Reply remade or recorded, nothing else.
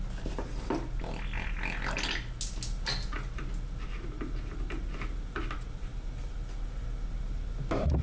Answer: recorded